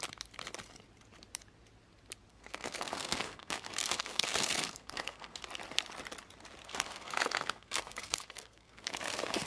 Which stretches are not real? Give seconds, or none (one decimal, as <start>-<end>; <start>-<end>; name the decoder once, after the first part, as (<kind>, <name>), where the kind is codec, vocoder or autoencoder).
2.3-5.4 (codec, SNAC); 6.6-9.5